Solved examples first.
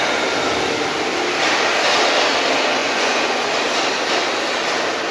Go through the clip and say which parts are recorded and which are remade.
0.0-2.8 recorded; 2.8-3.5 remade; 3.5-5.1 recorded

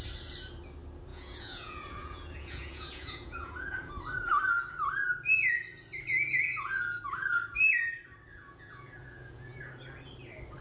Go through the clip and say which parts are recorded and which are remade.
0.0-1.1 recorded; 1.1-3.9 remade; 3.9-6.5 recorded; 6.5-7.0 remade; 7.0-8.3 recorded; 8.3-9.6 remade; 9.6-10.6 recorded

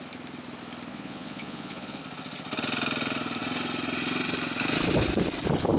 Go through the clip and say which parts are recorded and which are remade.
0.0-0.9 recorded; 0.9-2.0 remade; 2.0-5.8 recorded